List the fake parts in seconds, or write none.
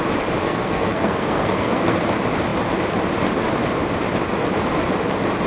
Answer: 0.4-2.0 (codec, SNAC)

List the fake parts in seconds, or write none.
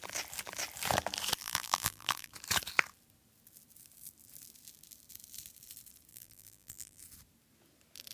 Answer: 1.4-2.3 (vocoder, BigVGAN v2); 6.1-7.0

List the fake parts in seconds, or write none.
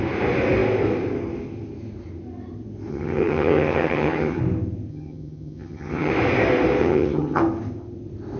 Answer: 2.9-4.4 (vocoder, HiFi-GAN); 4.9-6.1; 6.8-7.4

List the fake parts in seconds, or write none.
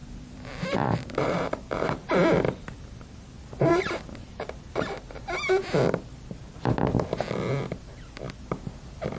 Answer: 0.0-5.2 (vocoder, BigVGAN v2)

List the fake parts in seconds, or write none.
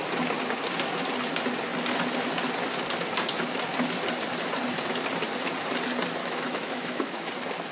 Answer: 6.2-7.3 (autoencoder, DAC-VAE)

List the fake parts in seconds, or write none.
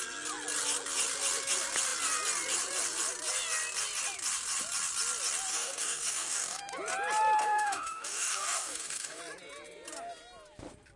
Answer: 5.5-6.6 (codec, DAC); 7.4-9.2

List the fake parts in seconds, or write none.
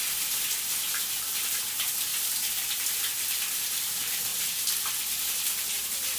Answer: 0.0-2.1 (vocoder, BigVGAN v2); 2.7-4.3; 4.9-6.2